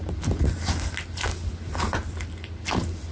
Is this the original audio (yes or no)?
yes